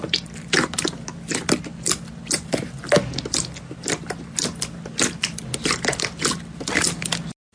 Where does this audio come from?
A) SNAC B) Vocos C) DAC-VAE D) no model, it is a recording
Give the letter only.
D